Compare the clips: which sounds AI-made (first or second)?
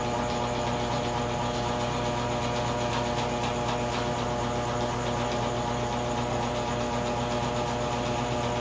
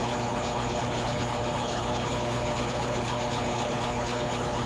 second